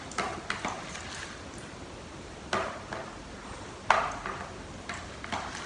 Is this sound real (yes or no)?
yes